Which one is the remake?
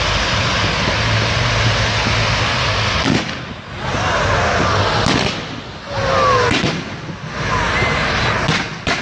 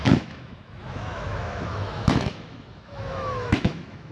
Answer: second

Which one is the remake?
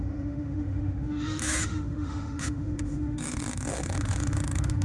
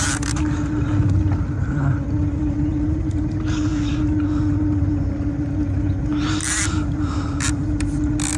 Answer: first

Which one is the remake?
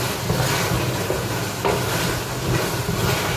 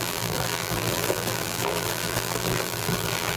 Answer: second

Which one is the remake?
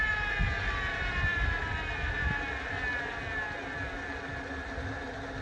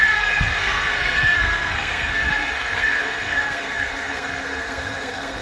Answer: second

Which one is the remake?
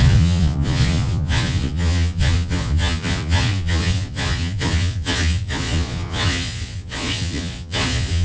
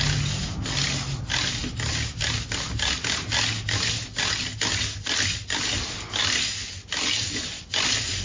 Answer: first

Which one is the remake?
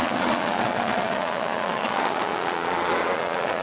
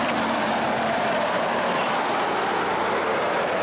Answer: first